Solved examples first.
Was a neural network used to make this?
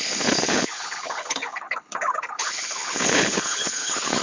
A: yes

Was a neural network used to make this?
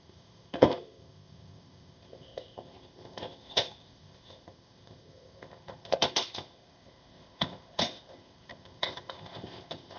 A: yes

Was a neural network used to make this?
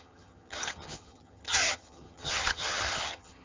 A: yes